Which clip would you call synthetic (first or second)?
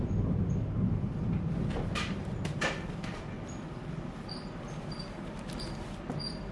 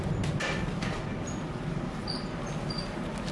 first